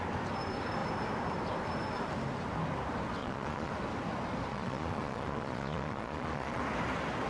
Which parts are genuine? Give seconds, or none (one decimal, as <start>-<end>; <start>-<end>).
0.0-3.2; 3.7-4.5; 6.6-7.3